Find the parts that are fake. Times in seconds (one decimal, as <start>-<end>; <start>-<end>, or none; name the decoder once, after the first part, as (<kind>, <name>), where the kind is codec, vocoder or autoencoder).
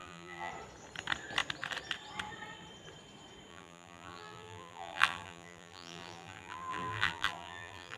0.0-0.5 (vocoder, BigVGAN v2); 3.5-8.0